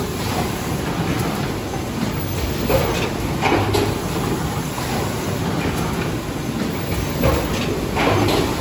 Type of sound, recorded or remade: recorded